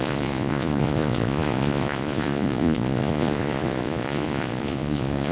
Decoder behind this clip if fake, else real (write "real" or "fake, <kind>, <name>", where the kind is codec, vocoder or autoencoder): fake, vocoder, Vocos